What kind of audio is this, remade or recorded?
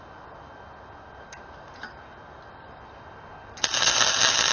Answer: recorded